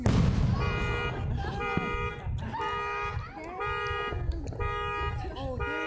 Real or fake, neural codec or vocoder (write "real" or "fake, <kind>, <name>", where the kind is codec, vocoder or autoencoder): real